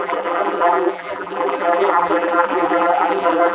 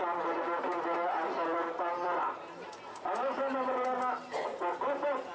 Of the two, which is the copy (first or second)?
first